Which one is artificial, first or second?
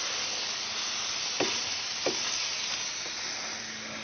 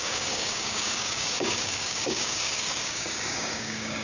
second